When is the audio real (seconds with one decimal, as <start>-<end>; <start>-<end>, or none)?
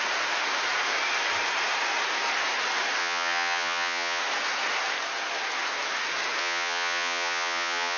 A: 0.0-3.0; 4.2-6.4